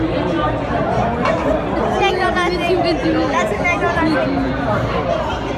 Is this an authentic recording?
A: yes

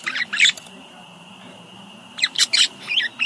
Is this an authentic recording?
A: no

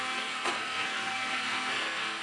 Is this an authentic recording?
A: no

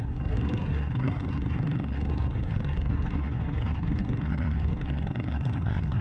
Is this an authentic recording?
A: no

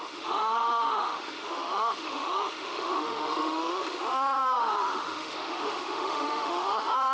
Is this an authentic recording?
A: no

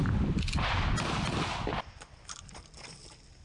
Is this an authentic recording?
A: yes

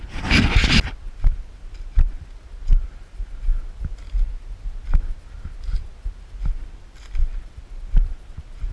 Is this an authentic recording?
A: yes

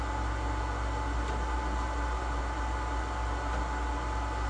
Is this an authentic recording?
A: yes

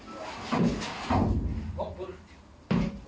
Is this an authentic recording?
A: yes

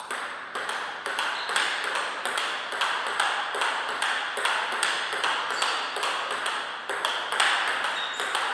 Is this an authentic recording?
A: yes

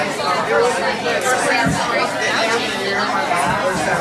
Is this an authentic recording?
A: yes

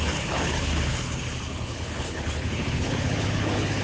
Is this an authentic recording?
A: no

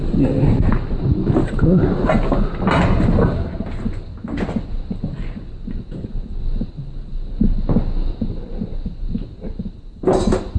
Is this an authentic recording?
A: yes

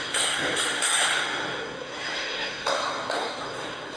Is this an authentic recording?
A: no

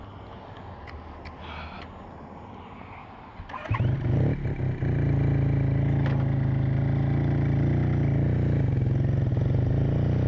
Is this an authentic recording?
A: yes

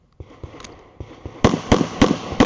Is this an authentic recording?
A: yes